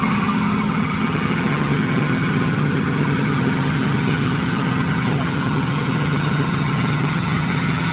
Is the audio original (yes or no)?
no